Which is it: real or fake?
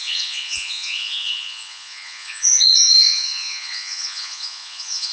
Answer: fake